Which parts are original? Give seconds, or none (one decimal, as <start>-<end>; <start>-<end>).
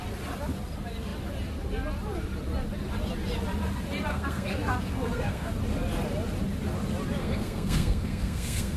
0.0-4.1; 5.5-7.2